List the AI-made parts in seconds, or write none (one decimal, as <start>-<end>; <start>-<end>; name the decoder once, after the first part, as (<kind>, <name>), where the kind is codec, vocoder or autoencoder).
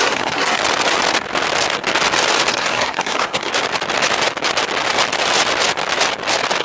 0.0-0.6 (codec, SNAC); 2.5-3.5